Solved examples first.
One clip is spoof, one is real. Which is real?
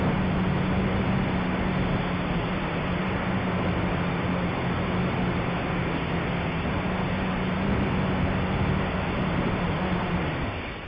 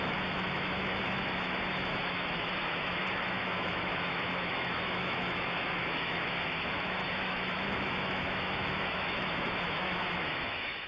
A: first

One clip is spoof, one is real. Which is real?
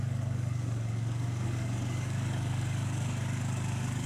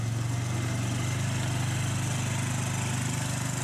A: second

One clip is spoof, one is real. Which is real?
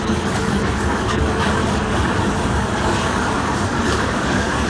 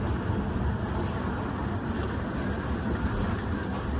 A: second